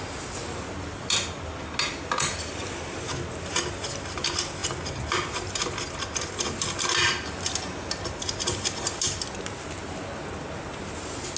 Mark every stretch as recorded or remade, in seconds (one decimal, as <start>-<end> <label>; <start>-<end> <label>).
0.0-11.4 recorded